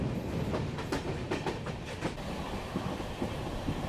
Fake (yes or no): no